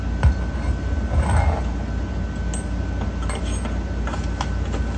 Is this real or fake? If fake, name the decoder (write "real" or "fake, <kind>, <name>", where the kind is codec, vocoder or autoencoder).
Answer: real